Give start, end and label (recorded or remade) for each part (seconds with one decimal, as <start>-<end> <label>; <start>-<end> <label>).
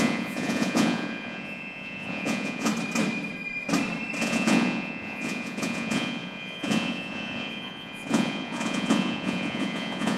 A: 0.0-2.7 remade; 2.7-4.2 recorded; 4.2-10.2 remade